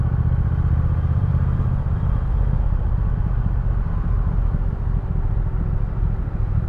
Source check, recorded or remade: remade